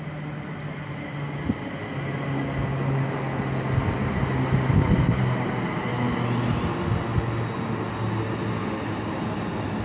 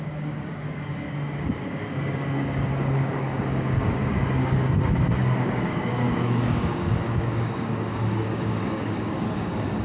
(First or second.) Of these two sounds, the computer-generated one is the second